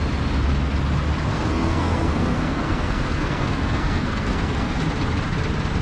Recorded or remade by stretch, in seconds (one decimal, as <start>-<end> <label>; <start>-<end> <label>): 0.0-1.3 recorded; 1.3-4.8 remade; 4.8-5.8 recorded